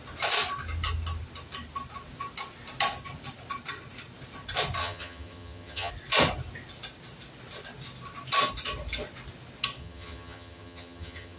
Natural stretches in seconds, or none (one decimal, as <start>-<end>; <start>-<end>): 0.0-4.8; 5.9-9.8